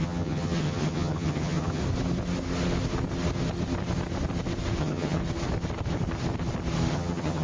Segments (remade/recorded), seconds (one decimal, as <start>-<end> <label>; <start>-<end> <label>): 0.0-1.8 remade; 1.8-4.8 recorded; 4.8-5.2 remade; 5.2-6.9 recorded; 6.9-7.4 remade